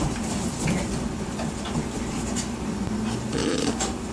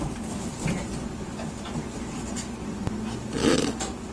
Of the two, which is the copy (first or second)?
first